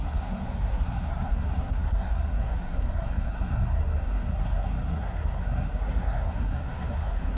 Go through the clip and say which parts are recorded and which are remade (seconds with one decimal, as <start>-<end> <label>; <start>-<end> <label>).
0.0-7.4 remade